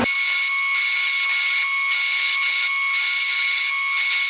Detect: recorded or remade recorded